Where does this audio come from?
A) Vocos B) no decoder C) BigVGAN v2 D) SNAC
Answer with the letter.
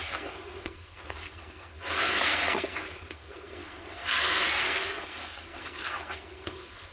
D